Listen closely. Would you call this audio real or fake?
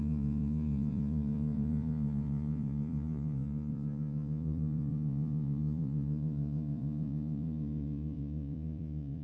fake